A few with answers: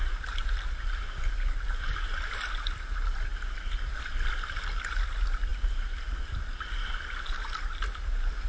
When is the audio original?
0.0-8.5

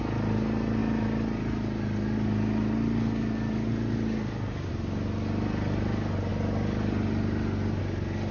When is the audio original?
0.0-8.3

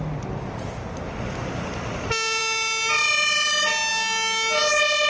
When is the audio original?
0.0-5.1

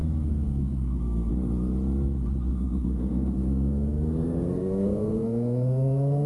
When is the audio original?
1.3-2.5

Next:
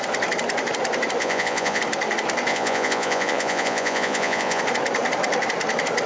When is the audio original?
0.0-1.2; 1.8-2.5; 4.6-6.1

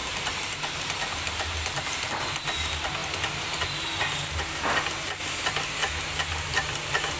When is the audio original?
2.1-7.2

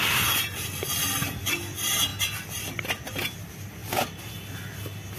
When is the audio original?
0.0-5.2

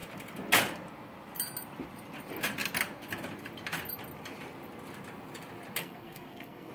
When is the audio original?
0.0-5.8